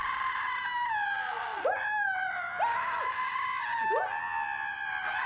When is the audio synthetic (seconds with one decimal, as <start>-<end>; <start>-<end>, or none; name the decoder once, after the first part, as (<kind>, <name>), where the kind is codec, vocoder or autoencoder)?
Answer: none